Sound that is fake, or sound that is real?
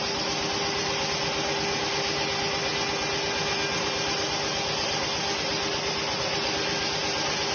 real